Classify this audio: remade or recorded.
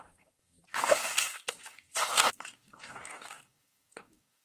remade